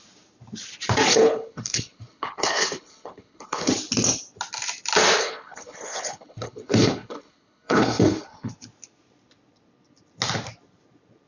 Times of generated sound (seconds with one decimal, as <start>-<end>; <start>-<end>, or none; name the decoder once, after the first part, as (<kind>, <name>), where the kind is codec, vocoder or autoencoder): 1.1-3.7 (codec, HILCodec); 5.2-8.5

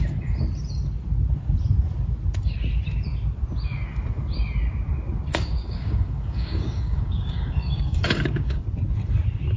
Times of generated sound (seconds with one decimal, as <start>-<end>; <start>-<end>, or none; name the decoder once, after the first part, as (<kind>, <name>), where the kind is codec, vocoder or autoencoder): 5.3-8.6 (codec, DAC)